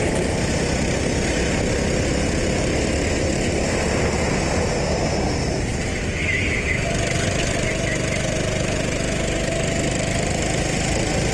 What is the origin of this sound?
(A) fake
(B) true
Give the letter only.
B